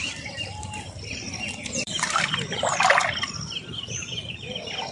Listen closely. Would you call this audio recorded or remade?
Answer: remade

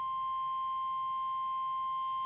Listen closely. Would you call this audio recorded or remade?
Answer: recorded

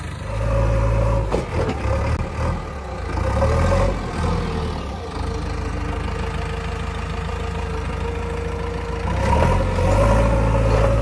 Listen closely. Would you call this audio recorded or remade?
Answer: recorded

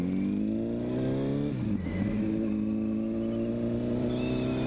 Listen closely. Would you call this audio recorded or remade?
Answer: recorded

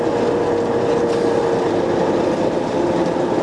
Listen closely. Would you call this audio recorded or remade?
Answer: recorded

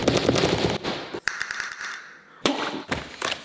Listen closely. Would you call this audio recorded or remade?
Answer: remade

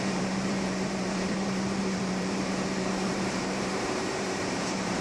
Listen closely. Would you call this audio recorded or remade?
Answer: remade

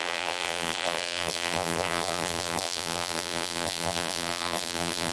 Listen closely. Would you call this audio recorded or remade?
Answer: remade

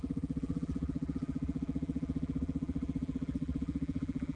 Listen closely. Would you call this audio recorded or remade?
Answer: remade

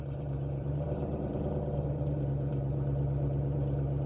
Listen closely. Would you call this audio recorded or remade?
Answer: remade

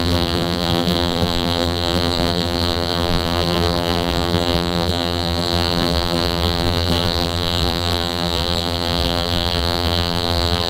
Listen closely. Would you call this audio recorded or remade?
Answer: remade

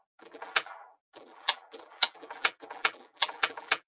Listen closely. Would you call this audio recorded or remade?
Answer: remade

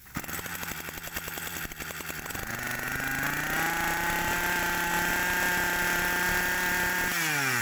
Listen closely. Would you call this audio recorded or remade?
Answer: recorded